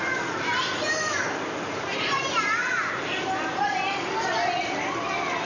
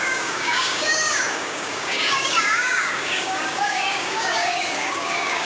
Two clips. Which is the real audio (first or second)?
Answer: first